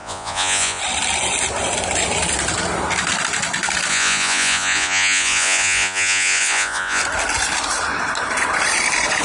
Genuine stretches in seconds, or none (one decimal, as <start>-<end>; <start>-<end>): 0.8-3.9; 7.0-9.2